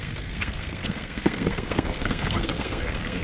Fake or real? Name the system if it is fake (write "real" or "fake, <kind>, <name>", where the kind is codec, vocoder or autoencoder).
fake, codec, SNAC